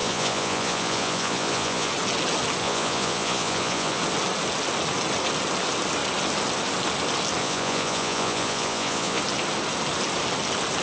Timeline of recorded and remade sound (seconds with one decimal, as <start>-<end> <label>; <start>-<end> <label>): 0.0-1.9 remade; 1.9-2.6 recorded; 2.6-4.0 remade; 4.0-7.4 recorded; 7.4-9.2 remade; 9.2-10.8 recorded